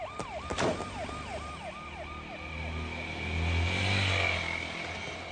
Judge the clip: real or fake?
real